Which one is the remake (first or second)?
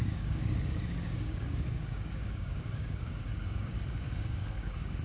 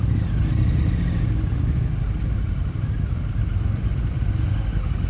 first